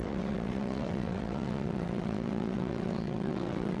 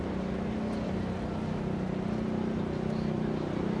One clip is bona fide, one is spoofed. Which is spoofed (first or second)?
first